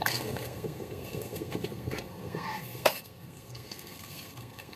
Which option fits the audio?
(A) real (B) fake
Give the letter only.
B